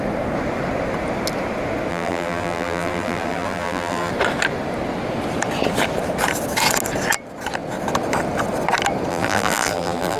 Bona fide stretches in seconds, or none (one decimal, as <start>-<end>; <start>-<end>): 0.0-1.9; 4.1-9.1